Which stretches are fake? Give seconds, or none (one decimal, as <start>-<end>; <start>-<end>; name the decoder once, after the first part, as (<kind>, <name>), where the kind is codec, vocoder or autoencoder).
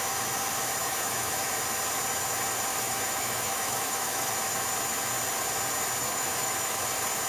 0.8-1.5 (autoencoder, DAC-VAE); 2.7-4.3; 6.1-6.8